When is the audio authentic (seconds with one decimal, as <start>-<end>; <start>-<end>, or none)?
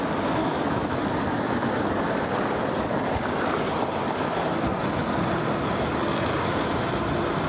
0.0-0.4; 1.0-7.5